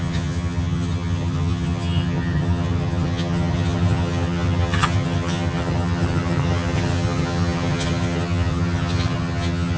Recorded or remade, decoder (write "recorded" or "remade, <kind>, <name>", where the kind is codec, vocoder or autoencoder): remade, vocoder, HiFi-GAN